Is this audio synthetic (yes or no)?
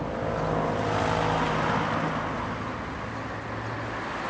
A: no